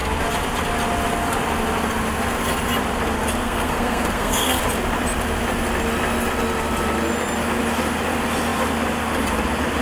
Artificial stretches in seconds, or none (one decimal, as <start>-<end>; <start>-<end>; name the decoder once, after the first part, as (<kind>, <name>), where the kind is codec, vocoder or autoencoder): 3.4-4.6 (codec, SNAC)